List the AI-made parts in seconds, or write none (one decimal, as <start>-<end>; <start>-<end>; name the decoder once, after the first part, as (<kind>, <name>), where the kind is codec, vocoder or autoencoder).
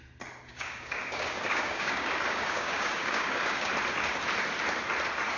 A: 0.5-3.7 (codec, DAC)